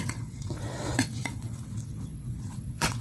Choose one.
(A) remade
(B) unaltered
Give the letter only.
A